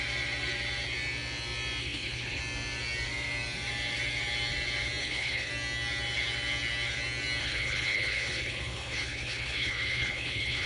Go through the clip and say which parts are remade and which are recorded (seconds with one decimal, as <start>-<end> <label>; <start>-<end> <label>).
0.0-1.8 recorded; 1.8-2.4 remade; 2.4-5.0 recorded; 5.0-5.5 remade; 5.5-7.4 recorded; 7.4-10.7 remade